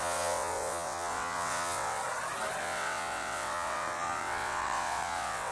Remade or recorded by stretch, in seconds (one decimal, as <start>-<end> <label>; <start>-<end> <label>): 0.0-2.0 remade; 2.0-2.6 recorded; 2.6-5.5 remade